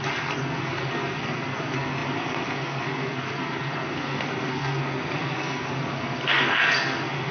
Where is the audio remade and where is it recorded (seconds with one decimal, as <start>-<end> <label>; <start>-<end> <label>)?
0.0-7.3 remade